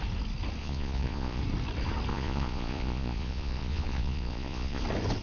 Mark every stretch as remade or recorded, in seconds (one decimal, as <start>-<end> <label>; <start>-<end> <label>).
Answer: 0.0-0.6 recorded; 0.6-1.4 remade; 1.4-2.1 recorded; 2.1-4.8 remade; 4.8-5.2 recorded